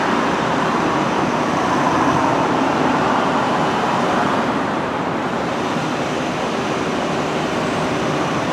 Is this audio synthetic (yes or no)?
yes